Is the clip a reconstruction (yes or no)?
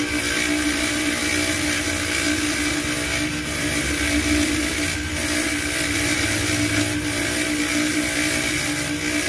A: no